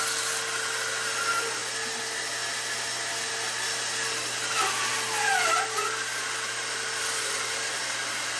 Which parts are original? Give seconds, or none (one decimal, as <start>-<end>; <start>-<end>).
0.0-8.4